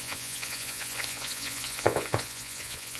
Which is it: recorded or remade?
remade